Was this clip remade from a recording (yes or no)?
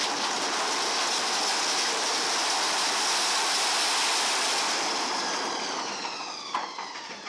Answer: no